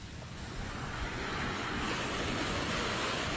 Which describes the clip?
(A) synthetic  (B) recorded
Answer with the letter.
A